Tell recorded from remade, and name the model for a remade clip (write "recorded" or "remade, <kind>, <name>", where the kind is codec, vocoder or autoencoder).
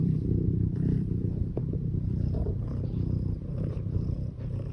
remade, vocoder, BigVGAN v2